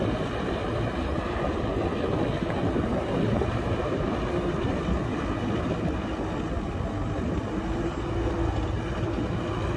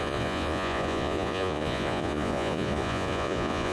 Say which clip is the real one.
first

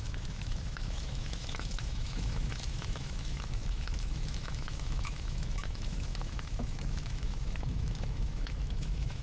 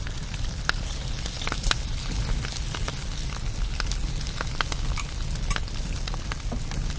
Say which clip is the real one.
second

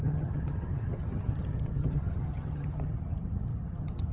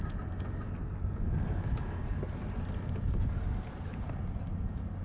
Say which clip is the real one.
second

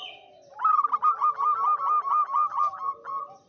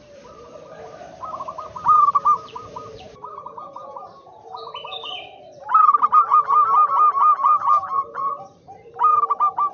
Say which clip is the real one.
first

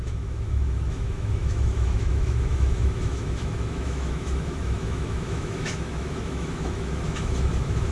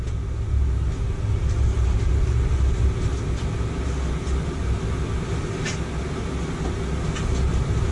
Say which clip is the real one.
second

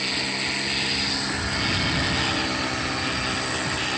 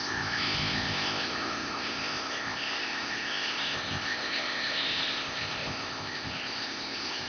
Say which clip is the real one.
first